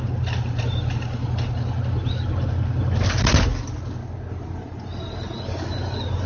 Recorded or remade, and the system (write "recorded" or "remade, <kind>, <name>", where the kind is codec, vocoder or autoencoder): recorded